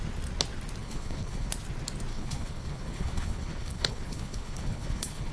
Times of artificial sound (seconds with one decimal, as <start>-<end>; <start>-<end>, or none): 0.8-1.5; 2.1-5.3